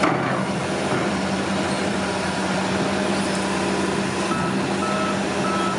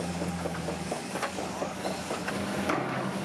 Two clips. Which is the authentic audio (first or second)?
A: first